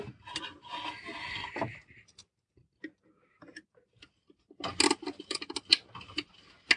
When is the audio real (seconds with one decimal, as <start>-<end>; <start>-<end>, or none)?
0.0-6.8

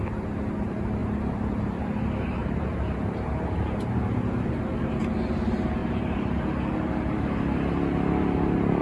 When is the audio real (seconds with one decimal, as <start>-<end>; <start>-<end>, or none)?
0.0-1.0; 1.8-2.4; 4.6-5.8; 6.4-8.8